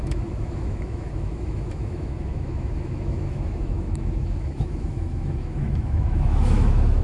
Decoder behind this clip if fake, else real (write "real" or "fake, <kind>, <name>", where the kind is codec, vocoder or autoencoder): fake, autoencoder, DAC-VAE